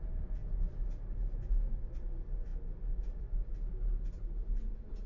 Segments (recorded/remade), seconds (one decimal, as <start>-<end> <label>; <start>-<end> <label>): 0.0-5.1 recorded